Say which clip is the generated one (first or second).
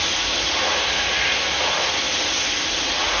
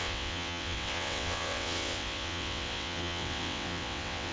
second